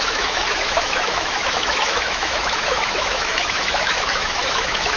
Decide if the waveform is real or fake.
fake